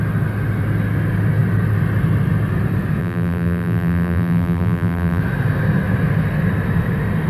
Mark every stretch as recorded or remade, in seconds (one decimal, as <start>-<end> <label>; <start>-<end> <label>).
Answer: 0.0-3.0 recorded; 3.0-5.2 remade; 5.2-7.3 recorded